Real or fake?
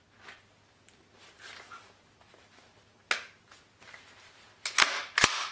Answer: real